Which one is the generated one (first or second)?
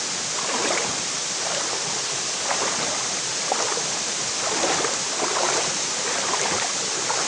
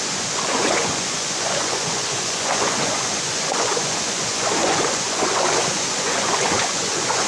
second